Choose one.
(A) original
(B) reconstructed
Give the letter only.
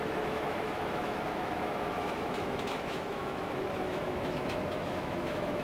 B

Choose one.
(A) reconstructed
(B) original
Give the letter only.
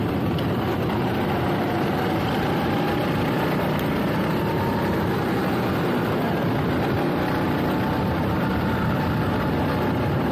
B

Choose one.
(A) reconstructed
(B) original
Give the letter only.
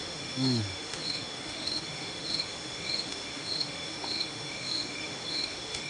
A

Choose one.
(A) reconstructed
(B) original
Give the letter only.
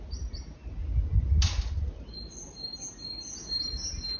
B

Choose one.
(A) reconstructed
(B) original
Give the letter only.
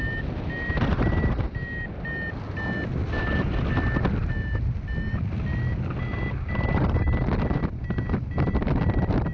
B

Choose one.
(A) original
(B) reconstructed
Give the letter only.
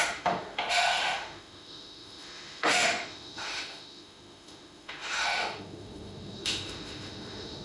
B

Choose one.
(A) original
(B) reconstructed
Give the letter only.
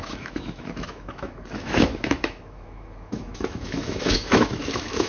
B